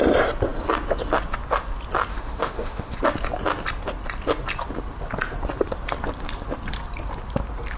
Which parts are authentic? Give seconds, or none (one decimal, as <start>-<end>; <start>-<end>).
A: 0.0-2.1; 3.0-7.8

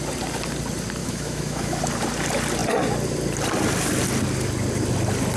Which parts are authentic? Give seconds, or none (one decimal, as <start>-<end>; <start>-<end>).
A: 0.0-1.0; 1.8-5.4